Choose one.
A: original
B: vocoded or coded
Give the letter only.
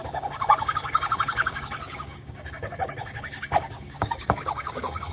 B